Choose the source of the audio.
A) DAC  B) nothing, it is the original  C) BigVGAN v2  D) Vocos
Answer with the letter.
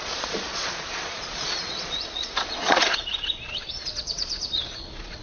D